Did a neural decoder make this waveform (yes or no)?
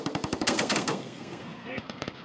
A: yes